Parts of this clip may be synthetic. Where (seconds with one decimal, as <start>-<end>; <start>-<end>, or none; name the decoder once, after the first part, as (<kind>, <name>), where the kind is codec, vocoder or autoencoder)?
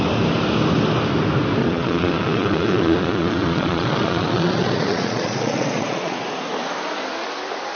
1.6-6.2 (vocoder, Vocos)